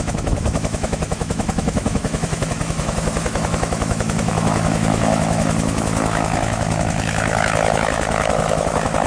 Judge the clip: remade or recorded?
remade